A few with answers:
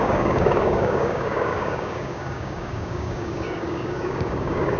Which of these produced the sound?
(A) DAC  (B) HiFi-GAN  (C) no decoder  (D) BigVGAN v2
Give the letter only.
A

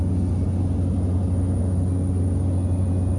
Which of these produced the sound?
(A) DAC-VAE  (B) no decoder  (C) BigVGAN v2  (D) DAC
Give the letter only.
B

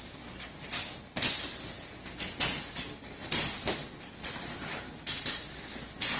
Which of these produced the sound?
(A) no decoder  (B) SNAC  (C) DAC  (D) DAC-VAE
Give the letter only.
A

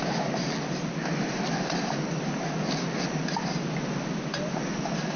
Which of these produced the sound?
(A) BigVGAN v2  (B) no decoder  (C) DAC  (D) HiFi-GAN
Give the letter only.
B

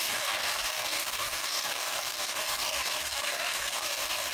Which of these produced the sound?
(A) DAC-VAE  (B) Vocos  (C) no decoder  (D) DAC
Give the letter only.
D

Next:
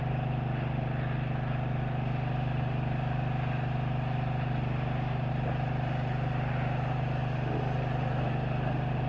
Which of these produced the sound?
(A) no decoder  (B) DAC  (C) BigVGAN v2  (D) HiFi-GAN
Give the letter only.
A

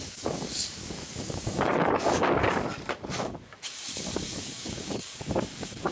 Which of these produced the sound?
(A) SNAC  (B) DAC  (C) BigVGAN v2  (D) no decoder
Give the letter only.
B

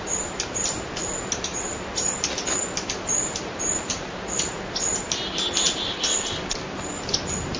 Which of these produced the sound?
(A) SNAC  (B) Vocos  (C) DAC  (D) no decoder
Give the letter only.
D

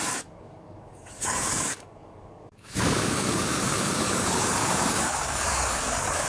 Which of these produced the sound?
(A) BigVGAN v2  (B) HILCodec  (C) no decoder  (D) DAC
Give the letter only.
D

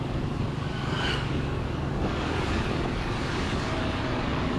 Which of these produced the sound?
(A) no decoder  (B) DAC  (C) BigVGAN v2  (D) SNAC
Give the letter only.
B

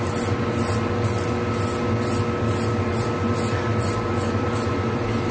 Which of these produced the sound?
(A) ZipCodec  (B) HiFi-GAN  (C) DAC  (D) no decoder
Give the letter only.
D